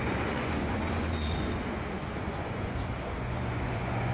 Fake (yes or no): yes